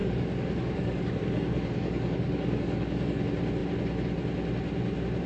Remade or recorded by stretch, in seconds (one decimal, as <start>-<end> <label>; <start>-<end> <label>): 0.0-3.2 remade; 3.2-5.3 recorded